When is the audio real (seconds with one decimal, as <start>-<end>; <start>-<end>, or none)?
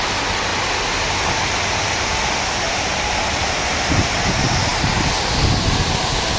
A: 0.0-6.4